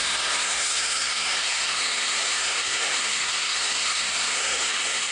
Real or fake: fake